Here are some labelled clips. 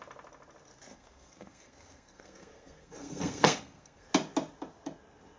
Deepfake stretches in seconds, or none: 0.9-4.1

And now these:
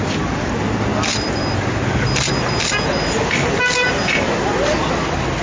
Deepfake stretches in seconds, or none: none

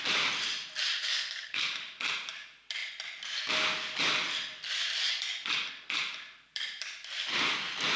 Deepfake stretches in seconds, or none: 1.0-1.7

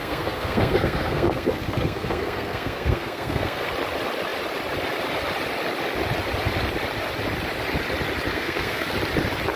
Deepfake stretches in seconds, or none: 0.0-3.7; 8.3-8.9

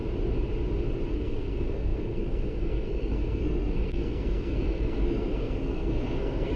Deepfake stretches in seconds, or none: 1.1-6.6

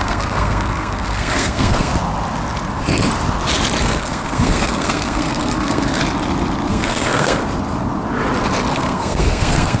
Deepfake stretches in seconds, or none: 0.0-1.9; 3.8-6.0; 6.7-7.4; 8.7-9.8

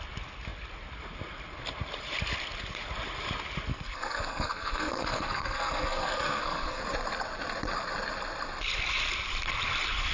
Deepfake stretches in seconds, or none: 3.7-6.8

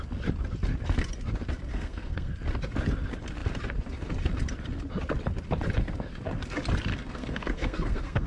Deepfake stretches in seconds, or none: 1.7-2.3; 6.9-8.3